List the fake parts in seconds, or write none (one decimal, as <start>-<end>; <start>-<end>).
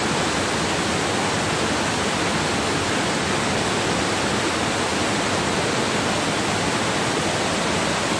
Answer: none